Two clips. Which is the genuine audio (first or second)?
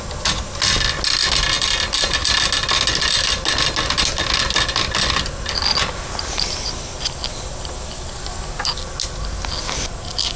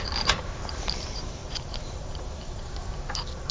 first